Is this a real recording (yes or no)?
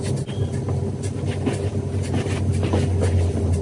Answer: yes